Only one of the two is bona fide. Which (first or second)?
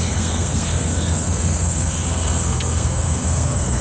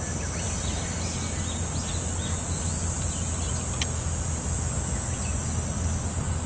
second